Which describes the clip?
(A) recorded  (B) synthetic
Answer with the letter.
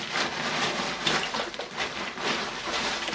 A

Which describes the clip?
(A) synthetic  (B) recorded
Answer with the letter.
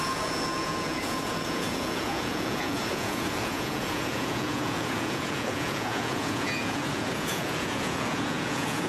A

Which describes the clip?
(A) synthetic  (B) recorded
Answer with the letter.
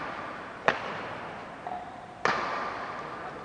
A